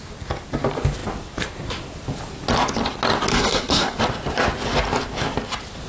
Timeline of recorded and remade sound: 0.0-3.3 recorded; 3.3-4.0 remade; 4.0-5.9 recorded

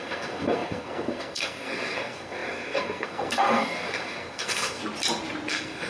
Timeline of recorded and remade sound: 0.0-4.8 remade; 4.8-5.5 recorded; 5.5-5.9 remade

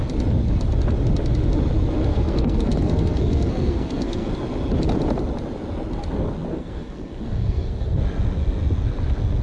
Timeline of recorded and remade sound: 0.0-2.1 recorded; 2.1-4.3 remade; 4.3-6.5 recorded; 6.5-8.0 remade; 8.0-9.4 recorded

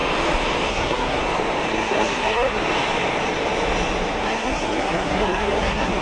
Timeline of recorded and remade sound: 0.0-0.7 recorded; 0.7-1.2 remade; 1.2-1.7 recorded; 1.7-2.6 remade; 2.6-4.2 recorded; 4.2-6.0 remade

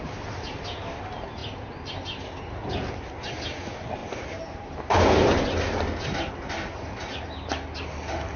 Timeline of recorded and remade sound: 0.0-8.4 recorded

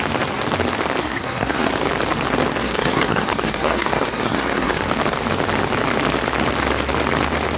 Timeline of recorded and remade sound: 0.0-1.0 recorded; 1.0-1.7 remade; 1.7-2.6 recorded; 2.6-4.8 remade; 4.8-7.6 recorded